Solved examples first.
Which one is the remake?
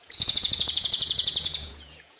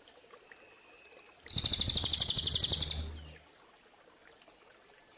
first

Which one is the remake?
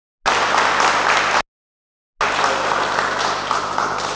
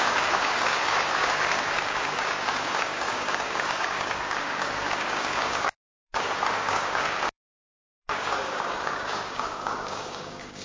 second